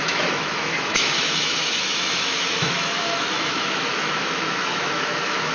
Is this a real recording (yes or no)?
no